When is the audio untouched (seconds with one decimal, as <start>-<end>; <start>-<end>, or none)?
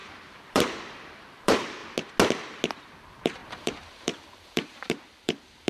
1.8-2.7